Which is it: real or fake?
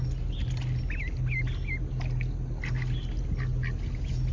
real